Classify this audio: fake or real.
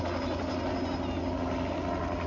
real